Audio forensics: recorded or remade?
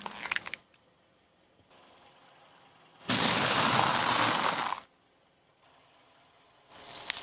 recorded